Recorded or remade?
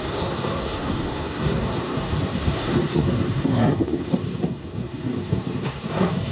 remade